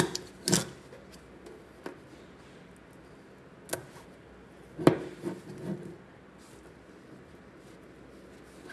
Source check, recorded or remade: recorded